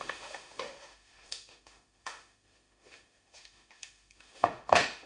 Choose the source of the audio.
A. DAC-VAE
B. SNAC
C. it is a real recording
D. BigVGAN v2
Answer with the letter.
A